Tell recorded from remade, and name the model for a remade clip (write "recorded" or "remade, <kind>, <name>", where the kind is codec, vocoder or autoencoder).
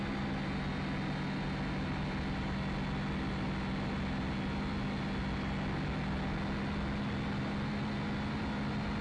recorded